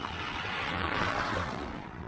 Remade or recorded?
remade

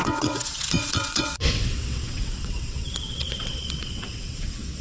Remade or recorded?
remade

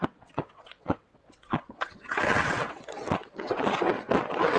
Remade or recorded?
remade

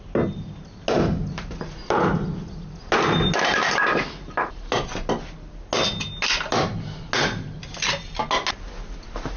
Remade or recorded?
recorded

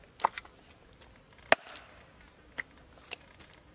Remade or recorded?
recorded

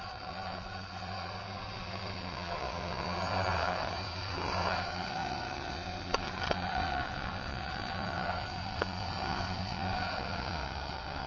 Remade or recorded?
remade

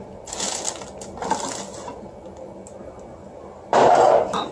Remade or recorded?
recorded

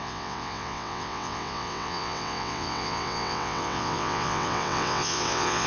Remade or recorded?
remade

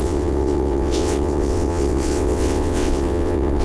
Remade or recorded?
remade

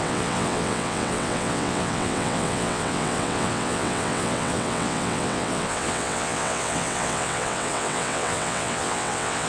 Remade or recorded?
remade